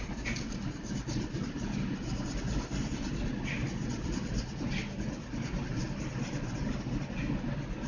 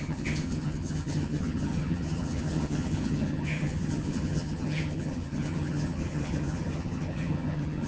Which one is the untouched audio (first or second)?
first